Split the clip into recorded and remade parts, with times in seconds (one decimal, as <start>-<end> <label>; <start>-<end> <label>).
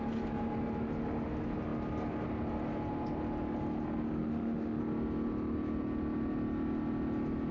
0.0-4.2 recorded; 4.2-4.8 remade; 4.8-7.5 recorded